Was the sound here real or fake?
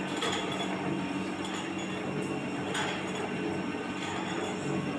real